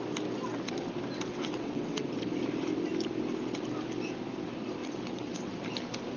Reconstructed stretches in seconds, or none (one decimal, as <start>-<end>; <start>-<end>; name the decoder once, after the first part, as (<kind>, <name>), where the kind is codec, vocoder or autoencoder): 1.3-2.1 (vocoder, WaveNeXt); 4.8-5.5

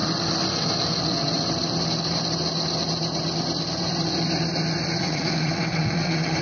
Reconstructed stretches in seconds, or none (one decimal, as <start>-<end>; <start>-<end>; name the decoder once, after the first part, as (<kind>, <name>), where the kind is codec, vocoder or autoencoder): 5.0-6.4 (vocoder, WaveNeXt)